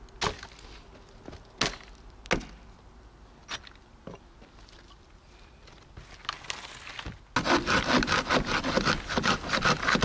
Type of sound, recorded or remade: recorded